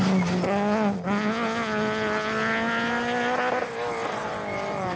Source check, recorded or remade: recorded